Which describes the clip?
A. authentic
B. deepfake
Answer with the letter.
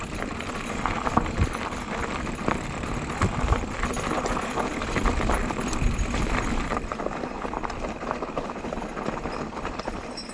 B